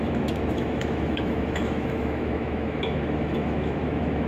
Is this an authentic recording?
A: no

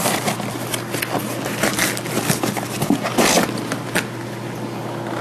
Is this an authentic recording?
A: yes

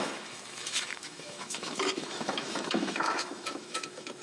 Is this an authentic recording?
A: no